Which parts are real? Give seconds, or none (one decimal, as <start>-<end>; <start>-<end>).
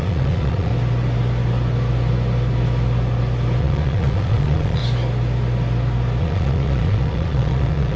0.7-3.6; 4.8-6.2